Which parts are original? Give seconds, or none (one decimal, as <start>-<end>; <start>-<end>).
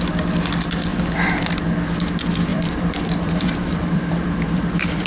0.0-0.9; 1.5-2.5